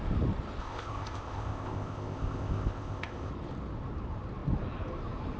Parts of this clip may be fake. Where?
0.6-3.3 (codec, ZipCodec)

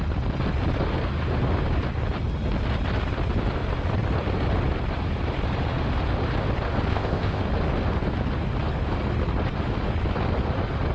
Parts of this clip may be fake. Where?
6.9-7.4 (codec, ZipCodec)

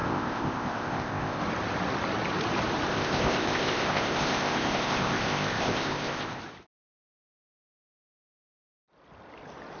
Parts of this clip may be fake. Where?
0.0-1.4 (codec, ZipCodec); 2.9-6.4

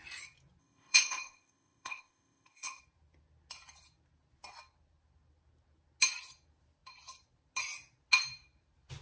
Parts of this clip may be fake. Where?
0.6-2.8 (codec, ZipCodec)

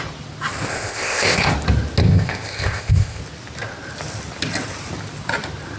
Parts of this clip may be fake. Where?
0.7-1.5 (codec, ZipCodec); 2.0-3.2

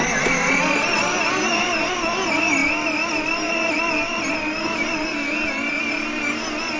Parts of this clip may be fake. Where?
none